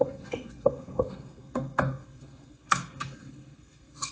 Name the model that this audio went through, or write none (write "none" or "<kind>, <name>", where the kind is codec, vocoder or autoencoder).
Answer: codec, SNAC